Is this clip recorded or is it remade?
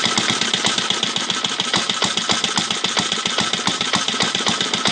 recorded